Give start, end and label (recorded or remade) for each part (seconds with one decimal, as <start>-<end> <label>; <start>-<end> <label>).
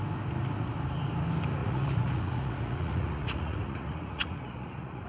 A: 0.0-1.6 recorded; 1.6-5.1 remade